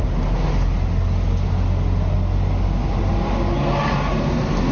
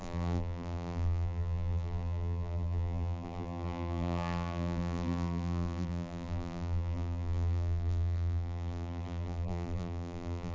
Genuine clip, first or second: first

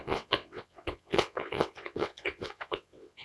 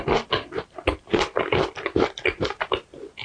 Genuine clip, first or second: second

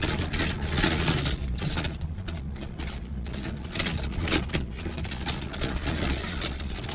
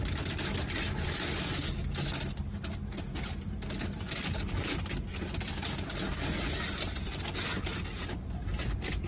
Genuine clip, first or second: second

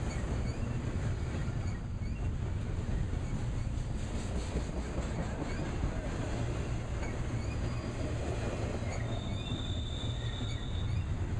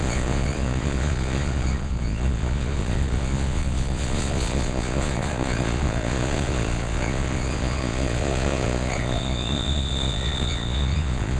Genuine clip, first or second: first